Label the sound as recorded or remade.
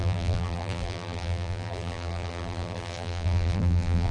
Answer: remade